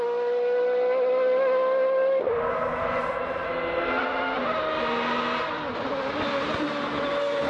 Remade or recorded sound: recorded